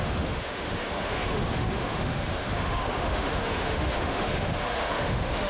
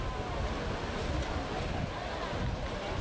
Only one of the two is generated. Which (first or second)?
first